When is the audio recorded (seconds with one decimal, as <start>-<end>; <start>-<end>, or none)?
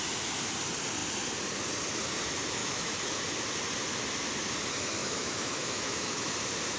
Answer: 0.0-2.6; 3.2-5.0; 6.3-6.8